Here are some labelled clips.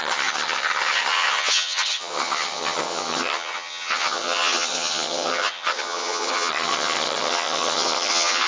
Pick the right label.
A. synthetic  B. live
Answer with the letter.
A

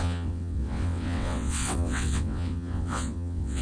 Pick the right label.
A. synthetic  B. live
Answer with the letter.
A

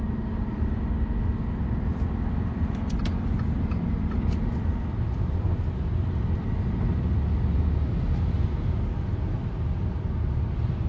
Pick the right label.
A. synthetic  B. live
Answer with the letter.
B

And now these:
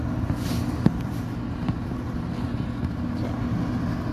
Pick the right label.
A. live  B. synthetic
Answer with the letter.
A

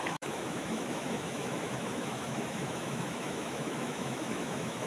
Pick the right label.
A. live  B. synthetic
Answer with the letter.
B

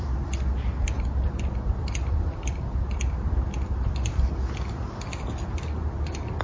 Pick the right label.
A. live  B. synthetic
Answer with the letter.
A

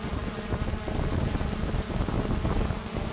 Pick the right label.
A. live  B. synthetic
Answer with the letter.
A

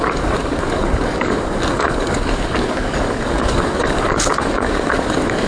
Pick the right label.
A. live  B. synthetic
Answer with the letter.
B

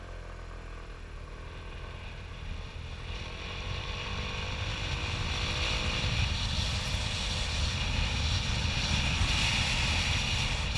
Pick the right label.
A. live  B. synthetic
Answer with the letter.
A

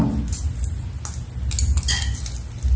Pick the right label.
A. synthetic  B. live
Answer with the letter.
B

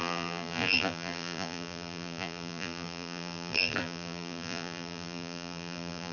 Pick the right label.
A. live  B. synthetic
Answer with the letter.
B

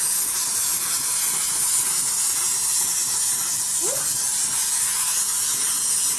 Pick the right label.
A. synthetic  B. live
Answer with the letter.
B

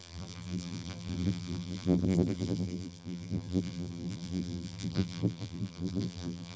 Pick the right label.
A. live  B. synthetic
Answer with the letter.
B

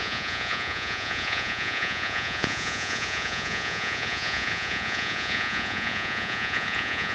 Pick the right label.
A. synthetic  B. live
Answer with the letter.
A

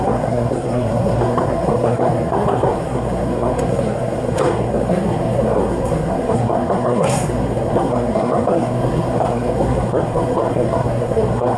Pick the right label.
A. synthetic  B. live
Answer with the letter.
A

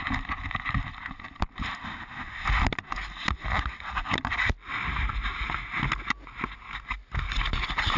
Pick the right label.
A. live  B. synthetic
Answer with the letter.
A